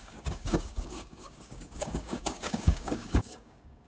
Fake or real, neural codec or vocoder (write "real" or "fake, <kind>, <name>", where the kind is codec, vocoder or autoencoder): fake, codec, DAC